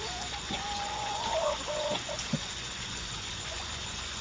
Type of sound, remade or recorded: remade